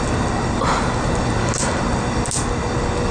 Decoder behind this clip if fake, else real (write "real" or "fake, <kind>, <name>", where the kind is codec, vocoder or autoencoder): real